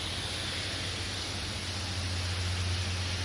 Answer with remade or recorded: recorded